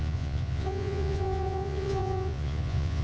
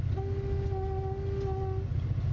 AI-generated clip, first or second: first